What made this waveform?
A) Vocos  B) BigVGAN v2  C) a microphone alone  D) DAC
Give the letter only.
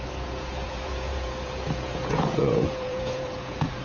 A